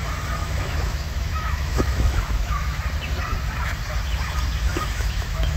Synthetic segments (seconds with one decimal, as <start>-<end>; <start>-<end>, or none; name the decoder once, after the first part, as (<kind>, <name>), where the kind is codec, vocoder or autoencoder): 0.4-2.8 (autoencoder, DAC-VAE); 4.7-5.6